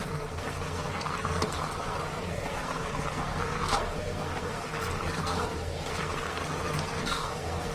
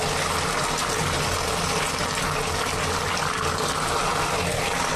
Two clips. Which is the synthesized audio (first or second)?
first